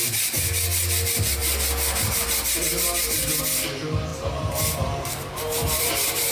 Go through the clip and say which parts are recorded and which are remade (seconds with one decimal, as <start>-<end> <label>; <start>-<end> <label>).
0.0-4.1 recorded; 4.1-6.3 remade